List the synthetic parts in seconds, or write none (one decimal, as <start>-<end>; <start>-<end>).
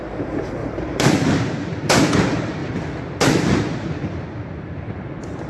0.6-2.1